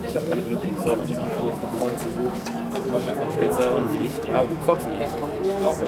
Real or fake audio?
fake